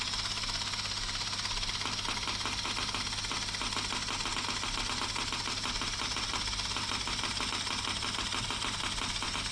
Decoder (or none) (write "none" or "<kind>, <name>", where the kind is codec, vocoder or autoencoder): none